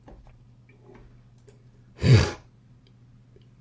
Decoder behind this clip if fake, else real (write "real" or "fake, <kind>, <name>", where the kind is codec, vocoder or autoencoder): real